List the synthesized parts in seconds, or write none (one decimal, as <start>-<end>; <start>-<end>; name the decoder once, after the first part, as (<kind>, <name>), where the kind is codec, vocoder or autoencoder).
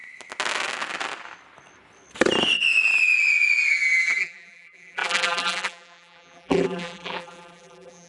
3.7-8.1 (vocoder, BigVGAN v2)